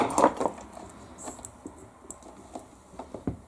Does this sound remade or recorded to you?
recorded